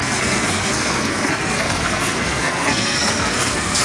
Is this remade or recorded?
remade